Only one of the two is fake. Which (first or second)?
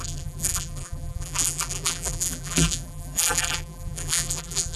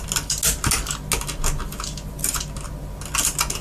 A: first